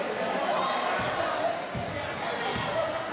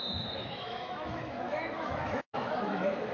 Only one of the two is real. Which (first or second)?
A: first